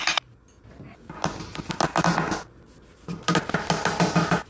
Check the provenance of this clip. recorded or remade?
recorded